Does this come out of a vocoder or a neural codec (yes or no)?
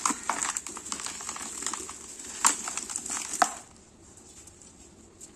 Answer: no